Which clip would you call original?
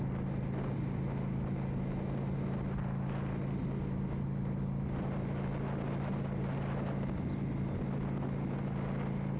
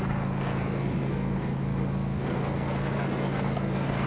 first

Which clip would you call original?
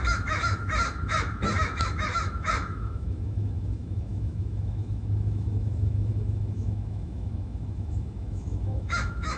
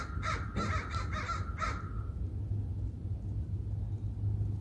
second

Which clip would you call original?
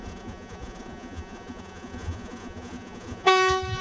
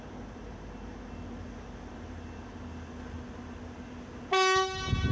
second